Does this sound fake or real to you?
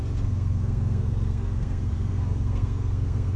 fake